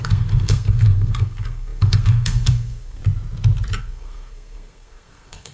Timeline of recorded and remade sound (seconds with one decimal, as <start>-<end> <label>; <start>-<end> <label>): 0.0-3.0 remade; 3.0-3.8 recorded; 3.8-5.5 remade